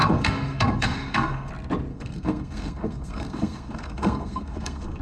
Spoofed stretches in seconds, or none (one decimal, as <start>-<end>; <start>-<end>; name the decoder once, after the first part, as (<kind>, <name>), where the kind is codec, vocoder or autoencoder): 0.0-1.5 (codec, SNAC); 1.9-5.0